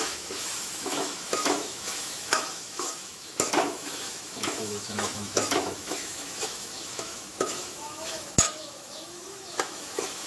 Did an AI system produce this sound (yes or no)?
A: yes